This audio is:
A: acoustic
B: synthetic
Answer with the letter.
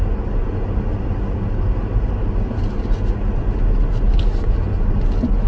A